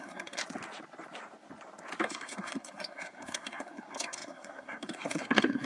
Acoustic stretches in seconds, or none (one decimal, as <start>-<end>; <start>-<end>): 0.4-2.0